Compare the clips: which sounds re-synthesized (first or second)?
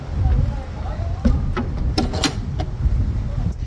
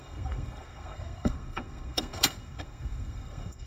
second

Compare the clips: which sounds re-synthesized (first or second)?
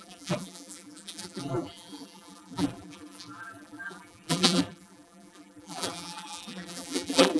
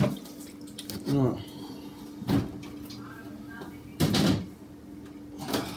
first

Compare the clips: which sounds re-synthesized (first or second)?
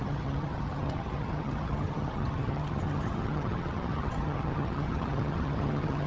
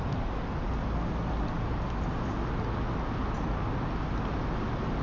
first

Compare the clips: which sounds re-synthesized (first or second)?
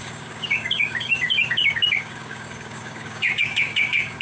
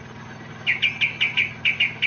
first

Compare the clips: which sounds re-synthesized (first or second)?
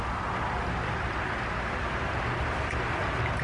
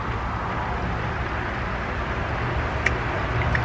first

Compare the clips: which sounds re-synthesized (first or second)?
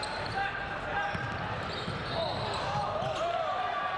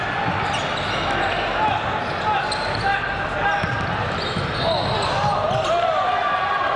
first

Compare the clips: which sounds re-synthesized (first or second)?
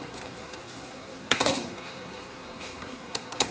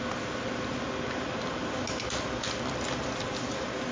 first